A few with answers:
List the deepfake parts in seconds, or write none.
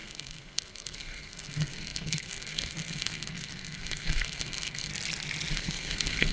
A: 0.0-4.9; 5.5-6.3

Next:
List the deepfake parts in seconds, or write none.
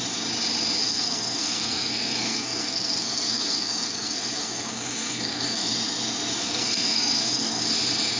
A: 0.8-5.7; 6.4-7.6